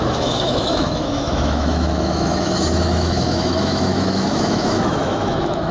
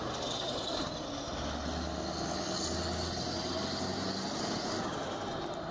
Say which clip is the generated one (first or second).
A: first